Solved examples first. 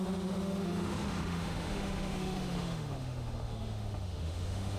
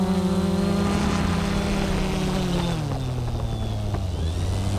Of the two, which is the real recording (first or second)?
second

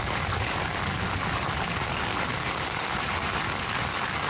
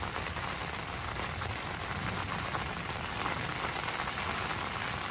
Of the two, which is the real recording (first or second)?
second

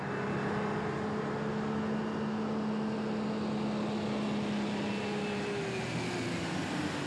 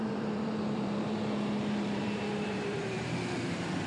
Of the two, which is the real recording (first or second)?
first